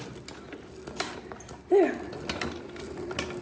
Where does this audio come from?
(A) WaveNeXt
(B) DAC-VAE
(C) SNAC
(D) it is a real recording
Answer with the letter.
D